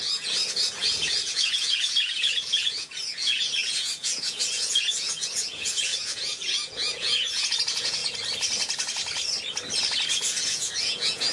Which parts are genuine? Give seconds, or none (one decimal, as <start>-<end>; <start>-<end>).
8.0-10.1